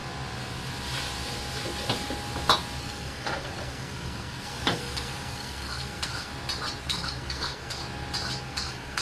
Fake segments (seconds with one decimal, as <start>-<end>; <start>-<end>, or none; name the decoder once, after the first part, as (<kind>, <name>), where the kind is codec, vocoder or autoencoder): 2.8-6.3 (codec, SNAC); 6.8-7.8; 8.4-9.0